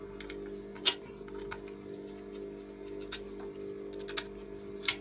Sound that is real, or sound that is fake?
real